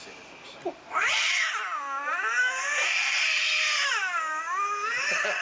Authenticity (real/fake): real